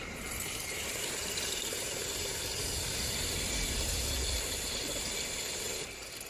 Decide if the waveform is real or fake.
fake